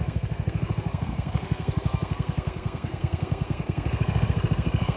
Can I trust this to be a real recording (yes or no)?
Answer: no